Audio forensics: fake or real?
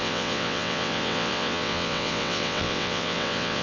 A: fake